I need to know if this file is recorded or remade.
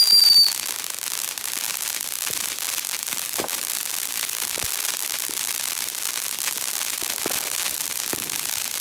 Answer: recorded